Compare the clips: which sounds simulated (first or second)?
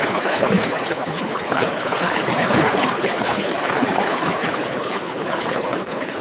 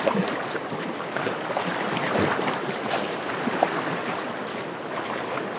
first